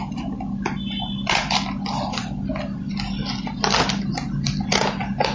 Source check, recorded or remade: recorded